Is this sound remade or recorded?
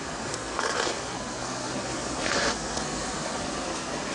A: remade